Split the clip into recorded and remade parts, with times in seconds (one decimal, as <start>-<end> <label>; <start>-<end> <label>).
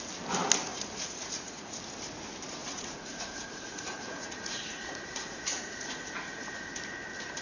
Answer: 0.0-0.7 recorded; 0.7-1.8 remade; 1.8-2.6 recorded; 2.6-6.7 remade; 6.7-7.4 recorded